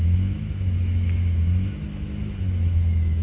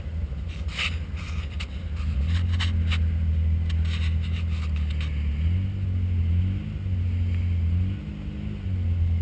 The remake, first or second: first